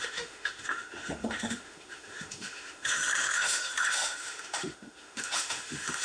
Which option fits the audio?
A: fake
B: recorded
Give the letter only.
A